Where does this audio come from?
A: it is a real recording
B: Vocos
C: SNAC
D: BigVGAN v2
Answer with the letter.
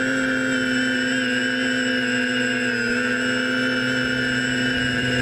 D